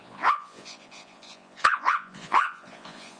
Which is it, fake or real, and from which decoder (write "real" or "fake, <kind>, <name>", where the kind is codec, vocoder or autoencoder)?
fake, vocoder, Vocos